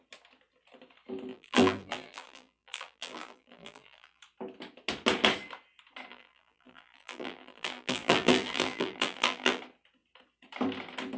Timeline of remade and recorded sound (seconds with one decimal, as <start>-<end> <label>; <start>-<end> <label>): 0.0-1.3 recorded; 1.3-4.2 remade; 4.2-6.1 recorded; 6.1-9.6 remade; 9.6-11.2 recorded